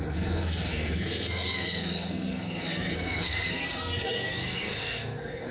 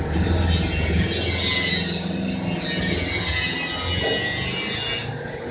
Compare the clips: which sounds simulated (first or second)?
first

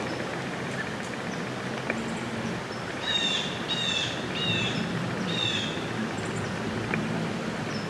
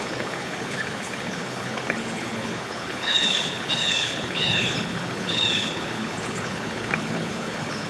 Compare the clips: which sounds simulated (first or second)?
second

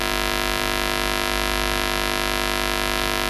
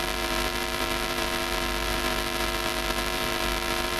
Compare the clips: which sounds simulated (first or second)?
second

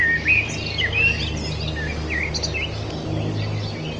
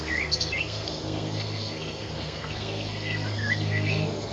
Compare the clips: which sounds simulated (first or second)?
second